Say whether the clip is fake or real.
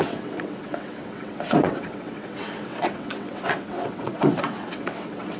fake